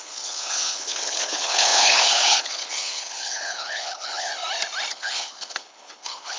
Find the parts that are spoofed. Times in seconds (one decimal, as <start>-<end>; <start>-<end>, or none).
0.0-4.3; 4.9-6.4